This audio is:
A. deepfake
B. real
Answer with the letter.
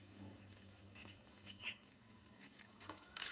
A